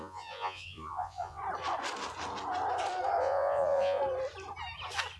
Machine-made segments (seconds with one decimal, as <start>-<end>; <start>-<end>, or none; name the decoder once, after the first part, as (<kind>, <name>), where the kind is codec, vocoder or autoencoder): 0.0-1.4 (vocoder, Vocos); 3.2-4.0